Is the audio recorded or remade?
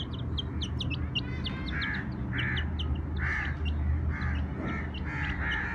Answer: recorded